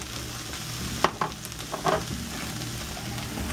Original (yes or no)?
yes